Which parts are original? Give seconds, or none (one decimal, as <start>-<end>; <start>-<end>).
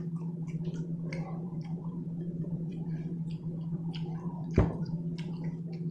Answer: 0.0-1.4; 4.9-5.9